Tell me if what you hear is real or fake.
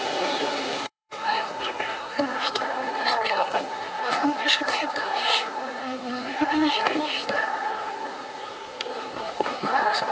fake